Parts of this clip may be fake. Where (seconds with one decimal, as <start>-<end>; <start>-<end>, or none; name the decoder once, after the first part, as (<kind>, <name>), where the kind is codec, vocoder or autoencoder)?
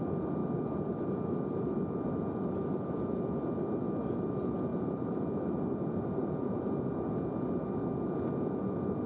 4.7-5.2 (vocoder, BigVGAN v2); 6.2-6.9